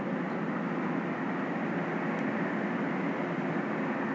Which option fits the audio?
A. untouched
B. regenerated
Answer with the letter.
A